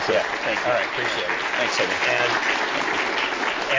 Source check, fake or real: real